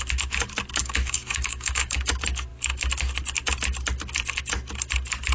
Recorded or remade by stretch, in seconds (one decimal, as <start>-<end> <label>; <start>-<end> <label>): 0.0-0.8 recorded; 0.8-2.1 remade; 2.1-5.3 recorded

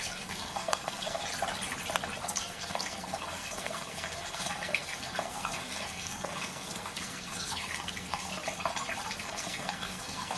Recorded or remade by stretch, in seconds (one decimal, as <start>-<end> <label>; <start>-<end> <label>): 0.0-1.2 remade; 1.2-2.2 recorded; 2.2-8.3 remade; 8.3-9.2 recorded; 9.2-10.4 remade

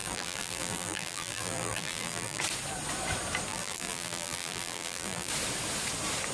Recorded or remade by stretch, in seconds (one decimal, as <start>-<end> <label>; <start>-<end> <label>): 0.0-2.4 remade; 2.4-3.5 recorded; 3.5-5.3 remade; 5.3-6.3 recorded